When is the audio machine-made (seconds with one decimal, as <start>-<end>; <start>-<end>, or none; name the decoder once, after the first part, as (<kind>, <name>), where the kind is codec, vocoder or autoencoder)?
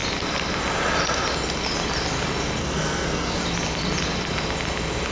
2.6-3.4 (codec, SNAC)